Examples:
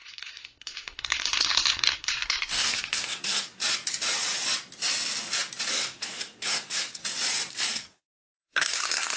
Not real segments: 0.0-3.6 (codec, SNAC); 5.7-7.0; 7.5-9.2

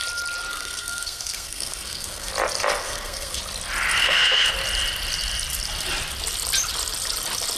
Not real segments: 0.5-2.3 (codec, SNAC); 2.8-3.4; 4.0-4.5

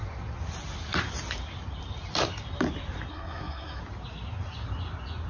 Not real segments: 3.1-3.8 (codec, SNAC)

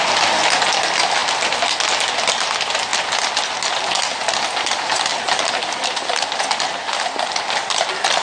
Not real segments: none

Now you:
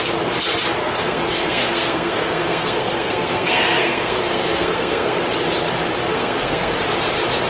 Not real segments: 0.8-5.2 (codec, SNAC); 6.1-6.7

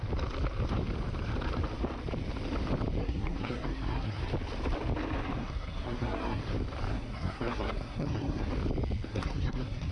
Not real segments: 3.0-4.2 (codec, SNAC); 5.4-6.4; 6.9-8.5; 9.1-9.9

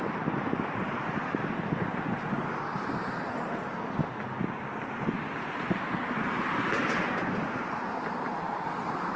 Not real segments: none

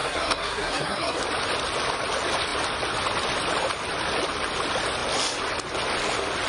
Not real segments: 0.0-1.2 (codec, SNAC)